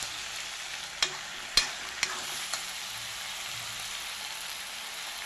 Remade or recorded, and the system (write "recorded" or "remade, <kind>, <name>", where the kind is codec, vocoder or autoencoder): recorded